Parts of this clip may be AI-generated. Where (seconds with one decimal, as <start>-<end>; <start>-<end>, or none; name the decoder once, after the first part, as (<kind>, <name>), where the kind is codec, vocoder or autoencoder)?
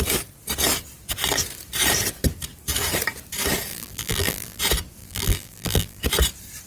3.7-4.6 (vocoder, BigVGAN v2); 5.0-6.0